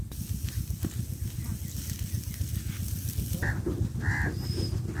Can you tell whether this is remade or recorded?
recorded